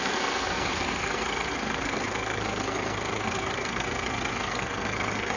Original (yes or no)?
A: no